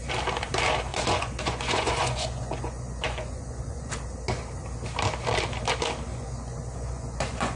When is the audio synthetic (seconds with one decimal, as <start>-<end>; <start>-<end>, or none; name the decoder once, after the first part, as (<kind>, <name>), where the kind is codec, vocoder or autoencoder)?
0.9-3.9 (vocoder, Vocos); 6.1-7.6

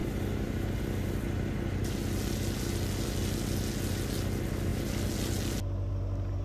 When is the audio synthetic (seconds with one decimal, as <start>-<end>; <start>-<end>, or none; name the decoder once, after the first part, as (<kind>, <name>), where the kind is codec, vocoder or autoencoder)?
0.0-0.8 (vocoder, BigVGAN v2)

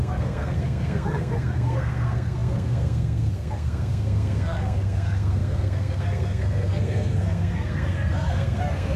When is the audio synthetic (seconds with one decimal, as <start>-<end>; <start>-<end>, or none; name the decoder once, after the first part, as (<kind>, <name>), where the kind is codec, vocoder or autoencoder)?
0.0-9.0 (codec, SNAC)

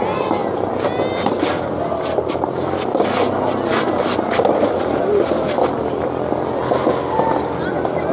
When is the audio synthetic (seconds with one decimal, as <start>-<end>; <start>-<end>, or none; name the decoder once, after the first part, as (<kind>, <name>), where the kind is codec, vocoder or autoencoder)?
3.7-5.0 (vocoder, BigVGAN v2)